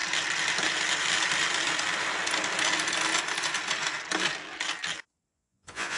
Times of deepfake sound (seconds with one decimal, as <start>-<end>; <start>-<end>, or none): 5.3-6.0